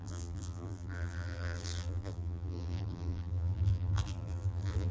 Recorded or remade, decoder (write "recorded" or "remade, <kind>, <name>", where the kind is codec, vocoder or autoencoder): remade, vocoder, BigVGAN v2